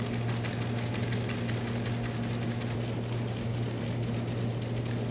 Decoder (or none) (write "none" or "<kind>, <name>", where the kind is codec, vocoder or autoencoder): none